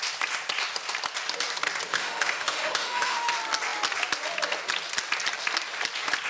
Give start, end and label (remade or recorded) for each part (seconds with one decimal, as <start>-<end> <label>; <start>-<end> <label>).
0.0-1.9 recorded; 1.9-3.3 remade; 3.3-6.3 recorded